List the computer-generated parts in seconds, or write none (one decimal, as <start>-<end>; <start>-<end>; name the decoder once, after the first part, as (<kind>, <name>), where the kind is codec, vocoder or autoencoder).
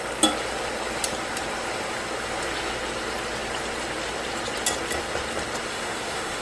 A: 5.7-6.4 (autoencoder, DAC-VAE)